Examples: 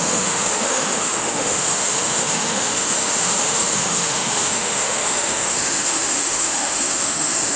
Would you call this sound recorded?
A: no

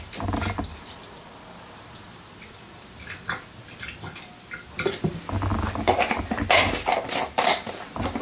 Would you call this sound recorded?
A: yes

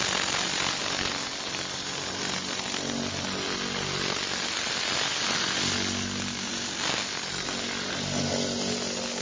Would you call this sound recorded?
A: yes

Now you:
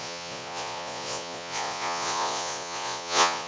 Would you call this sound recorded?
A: no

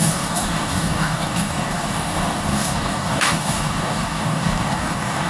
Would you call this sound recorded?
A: no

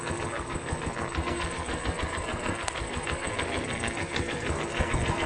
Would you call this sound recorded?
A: no